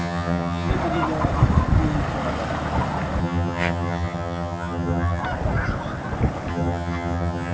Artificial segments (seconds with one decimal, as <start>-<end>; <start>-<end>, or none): 0.0-0.7; 3.2-5.2; 6.5-7.5